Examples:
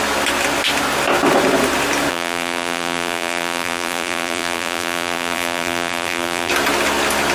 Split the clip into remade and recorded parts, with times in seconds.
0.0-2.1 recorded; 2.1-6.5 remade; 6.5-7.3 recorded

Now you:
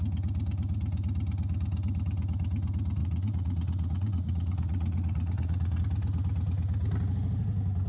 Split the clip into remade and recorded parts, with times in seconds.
0.0-3.0 recorded; 3.0-5.8 remade; 5.8-7.9 recorded

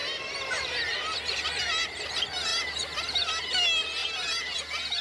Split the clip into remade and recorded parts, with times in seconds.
0.0-1.6 remade; 1.6-2.5 recorded; 2.5-3.4 remade; 3.4-5.0 recorded

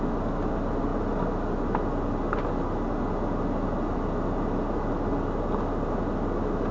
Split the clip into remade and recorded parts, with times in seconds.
0.0-6.7 recorded

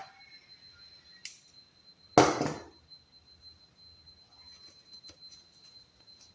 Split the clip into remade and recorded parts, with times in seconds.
0.0-6.3 recorded

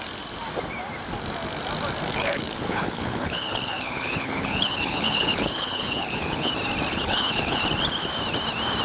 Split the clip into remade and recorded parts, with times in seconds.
0.0-2.1 recorded; 2.1-6.5 remade; 6.5-6.9 recorded; 6.9-7.6 remade; 7.6-8.8 recorded

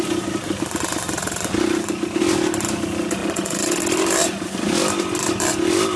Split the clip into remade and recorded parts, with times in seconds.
0.0-6.0 recorded